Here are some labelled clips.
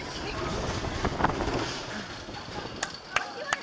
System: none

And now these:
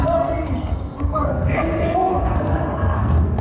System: codec, SNAC